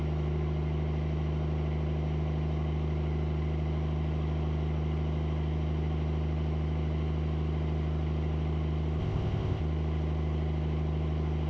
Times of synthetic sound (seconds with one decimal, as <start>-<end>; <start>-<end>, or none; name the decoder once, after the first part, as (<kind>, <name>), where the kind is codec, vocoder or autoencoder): 9.0-9.6 (codec, ZipCodec)